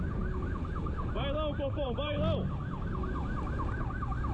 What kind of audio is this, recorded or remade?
recorded